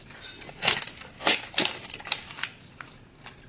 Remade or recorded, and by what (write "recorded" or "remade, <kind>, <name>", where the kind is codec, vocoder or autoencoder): recorded